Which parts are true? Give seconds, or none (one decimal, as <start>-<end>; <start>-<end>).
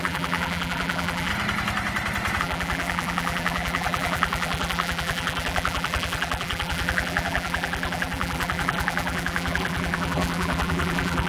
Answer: 1.3-2.4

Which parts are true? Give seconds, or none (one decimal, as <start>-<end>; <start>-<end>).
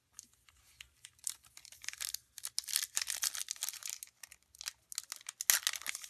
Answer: 0.0-6.1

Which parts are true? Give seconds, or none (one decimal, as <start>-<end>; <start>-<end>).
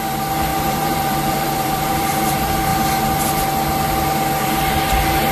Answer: 2.7-4.4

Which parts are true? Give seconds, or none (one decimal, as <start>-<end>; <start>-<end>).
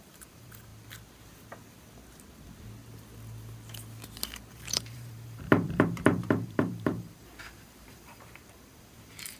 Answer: 0.7-4.5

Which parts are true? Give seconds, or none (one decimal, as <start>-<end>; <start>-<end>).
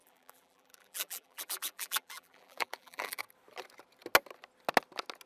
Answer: 3.2-5.3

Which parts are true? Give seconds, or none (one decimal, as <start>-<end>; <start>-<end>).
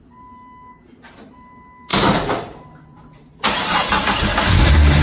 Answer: 0.0-1.9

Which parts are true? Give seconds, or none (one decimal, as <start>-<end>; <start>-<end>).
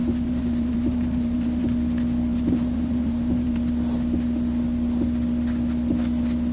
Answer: 1.6-2.3; 3.7-6.5